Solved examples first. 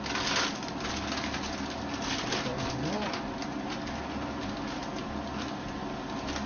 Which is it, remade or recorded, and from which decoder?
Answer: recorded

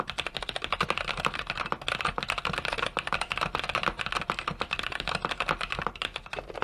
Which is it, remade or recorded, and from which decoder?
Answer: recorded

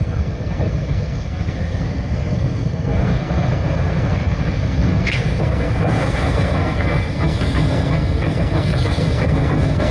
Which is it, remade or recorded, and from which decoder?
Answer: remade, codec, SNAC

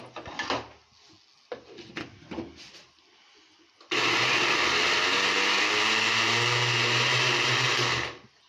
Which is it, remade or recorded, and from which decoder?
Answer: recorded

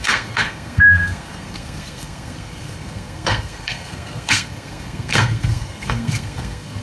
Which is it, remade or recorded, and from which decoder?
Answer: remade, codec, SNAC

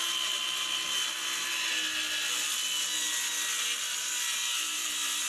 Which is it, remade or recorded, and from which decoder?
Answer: recorded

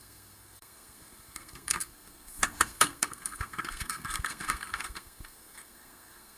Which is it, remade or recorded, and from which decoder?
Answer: remade, codec, SNAC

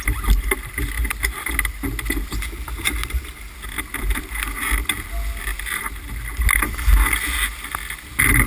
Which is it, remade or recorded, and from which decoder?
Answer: recorded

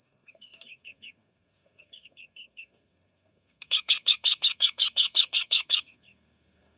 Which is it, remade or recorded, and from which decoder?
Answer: remade, codec, SNAC